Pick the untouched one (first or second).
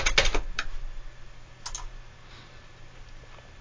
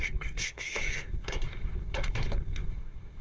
first